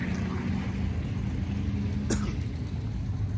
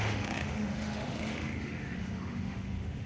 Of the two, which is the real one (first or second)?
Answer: first